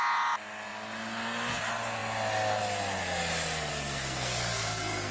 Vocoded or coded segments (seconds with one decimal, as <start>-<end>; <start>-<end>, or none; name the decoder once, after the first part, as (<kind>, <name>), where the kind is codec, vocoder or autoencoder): 3.7-5.1 (codec, SNAC)

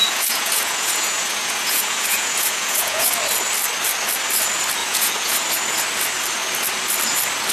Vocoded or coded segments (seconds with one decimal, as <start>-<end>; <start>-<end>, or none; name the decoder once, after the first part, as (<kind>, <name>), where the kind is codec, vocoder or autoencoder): 0.0-3.2 (vocoder, Vocos); 4.8-5.4

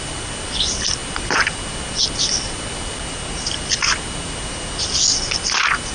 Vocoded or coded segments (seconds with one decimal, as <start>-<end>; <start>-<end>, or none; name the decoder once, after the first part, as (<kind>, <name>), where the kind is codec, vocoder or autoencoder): none

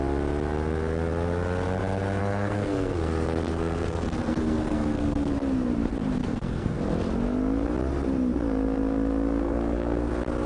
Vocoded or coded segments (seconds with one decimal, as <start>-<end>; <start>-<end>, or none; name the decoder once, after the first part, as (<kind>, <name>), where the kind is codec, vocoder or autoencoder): 2.2-5.3 (codec, SNAC); 6.2-6.8; 9.4-10.1

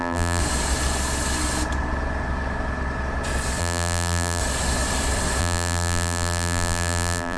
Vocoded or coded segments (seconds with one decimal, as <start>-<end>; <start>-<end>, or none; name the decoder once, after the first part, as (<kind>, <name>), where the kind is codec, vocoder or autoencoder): 0.0-0.4 (vocoder, BigVGAN v2); 3.6-4.4; 5.4-7.4

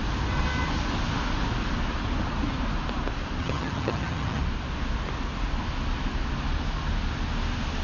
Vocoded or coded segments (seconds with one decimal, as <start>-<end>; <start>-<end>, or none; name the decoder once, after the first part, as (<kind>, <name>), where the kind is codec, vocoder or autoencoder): 3.4-4.4 (vocoder, HiFi-GAN)

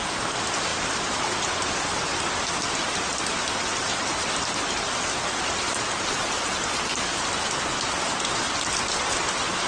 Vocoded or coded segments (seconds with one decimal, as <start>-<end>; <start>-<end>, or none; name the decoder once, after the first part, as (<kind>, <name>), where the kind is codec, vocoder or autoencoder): none